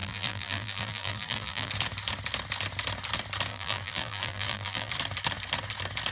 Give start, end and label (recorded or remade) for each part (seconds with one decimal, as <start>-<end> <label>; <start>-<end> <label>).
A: 0.0-1.7 remade; 1.7-3.5 recorded; 3.5-4.9 remade; 4.9-6.1 recorded